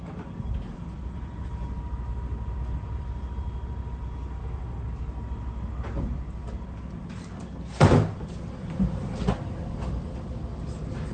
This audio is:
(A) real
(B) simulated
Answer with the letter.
A